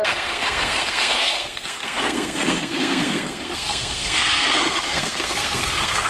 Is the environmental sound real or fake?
fake